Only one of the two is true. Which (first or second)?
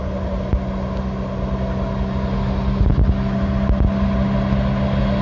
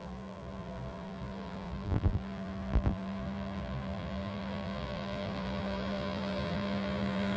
first